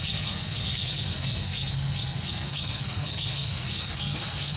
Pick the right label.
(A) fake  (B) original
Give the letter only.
A